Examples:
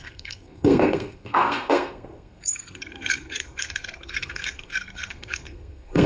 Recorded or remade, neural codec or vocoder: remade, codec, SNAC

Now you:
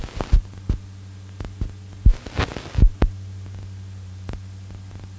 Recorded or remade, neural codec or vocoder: recorded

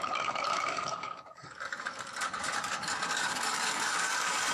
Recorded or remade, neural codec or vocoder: remade, codec, DAC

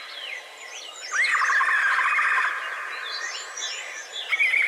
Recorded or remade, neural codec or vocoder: recorded